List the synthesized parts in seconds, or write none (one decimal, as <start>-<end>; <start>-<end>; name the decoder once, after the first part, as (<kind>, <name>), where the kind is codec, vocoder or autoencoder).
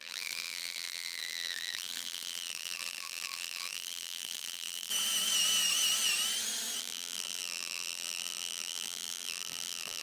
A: 0.0-4.9 (vocoder, BigVGAN v2); 6.8-10.0